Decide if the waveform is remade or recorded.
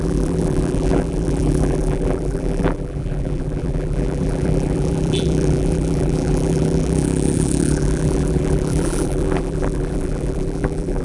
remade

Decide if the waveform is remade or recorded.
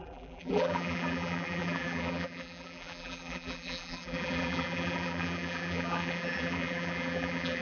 remade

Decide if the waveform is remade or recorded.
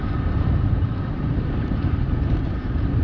remade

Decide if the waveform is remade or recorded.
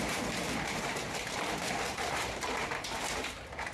remade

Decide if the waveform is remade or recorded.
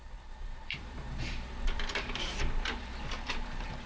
remade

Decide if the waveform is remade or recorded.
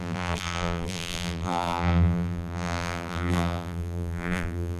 remade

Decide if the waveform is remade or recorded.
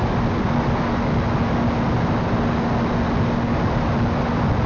recorded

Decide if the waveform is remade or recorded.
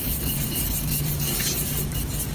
remade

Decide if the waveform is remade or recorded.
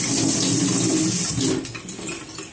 recorded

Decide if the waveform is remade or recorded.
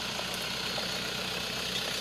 recorded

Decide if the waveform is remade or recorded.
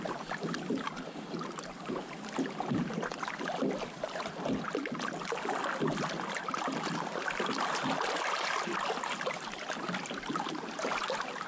recorded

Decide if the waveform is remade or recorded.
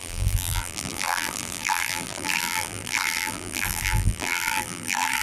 remade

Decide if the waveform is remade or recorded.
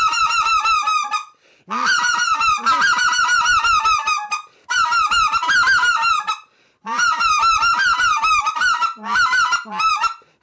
recorded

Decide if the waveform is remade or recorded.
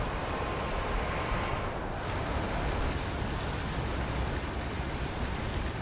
remade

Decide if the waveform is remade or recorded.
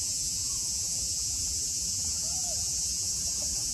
remade